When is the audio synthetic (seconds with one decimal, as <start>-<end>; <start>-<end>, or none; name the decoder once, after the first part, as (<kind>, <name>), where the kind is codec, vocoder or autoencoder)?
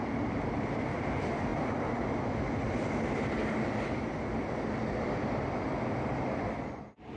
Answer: 0.0-7.2 (vocoder, BigVGAN v2)